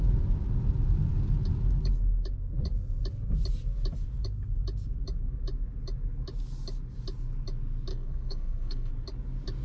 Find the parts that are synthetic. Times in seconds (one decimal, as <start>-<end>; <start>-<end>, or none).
7.9-8.9